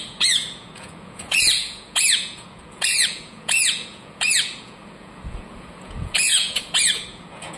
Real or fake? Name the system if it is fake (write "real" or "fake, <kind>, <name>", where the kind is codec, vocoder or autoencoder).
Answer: fake, vocoder, Vocos